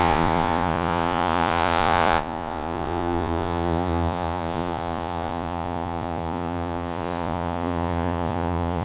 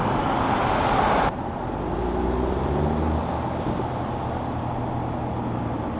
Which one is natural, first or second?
second